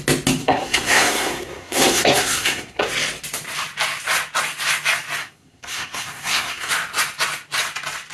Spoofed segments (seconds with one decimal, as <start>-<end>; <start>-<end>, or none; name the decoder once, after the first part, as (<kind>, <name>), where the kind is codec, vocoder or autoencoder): 0.4-2.9 (codec, SNAC); 5.2-6.7